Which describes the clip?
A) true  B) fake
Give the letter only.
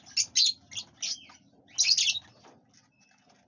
A